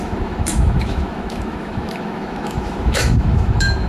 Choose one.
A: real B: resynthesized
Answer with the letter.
B